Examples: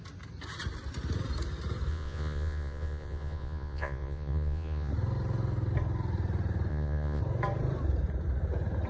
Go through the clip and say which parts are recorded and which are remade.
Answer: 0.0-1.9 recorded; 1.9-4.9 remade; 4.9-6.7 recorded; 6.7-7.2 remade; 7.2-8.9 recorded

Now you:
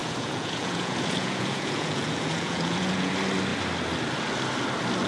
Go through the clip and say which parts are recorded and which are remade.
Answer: 0.0-3.1 remade; 3.1-5.1 recorded

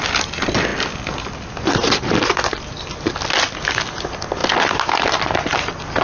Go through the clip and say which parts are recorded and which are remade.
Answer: 0.0-6.0 recorded